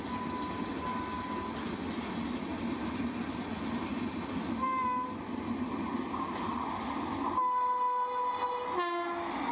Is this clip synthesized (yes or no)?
no